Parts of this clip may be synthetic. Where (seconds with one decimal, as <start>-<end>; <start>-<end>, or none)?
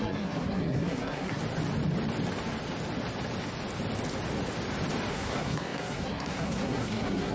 0.0-1.4; 5.1-7.3